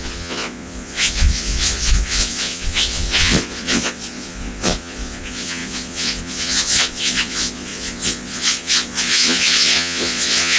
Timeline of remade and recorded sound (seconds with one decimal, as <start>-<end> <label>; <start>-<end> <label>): 0.0-10.6 remade